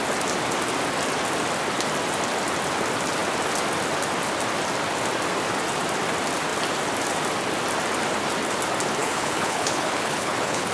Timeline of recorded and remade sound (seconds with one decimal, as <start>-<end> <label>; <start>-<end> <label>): 0.0-9.0 recorded; 9.0-10.7 remade